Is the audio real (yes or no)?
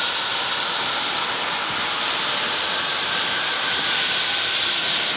yes